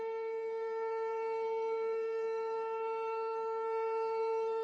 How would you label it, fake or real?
fake